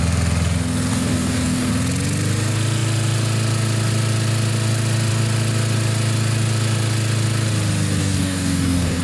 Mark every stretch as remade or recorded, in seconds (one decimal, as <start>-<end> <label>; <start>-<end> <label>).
0.0-0.9 recorded; 0.9-1.7 remade; 1.7-8.0 recorded; 8.0-9.0 remade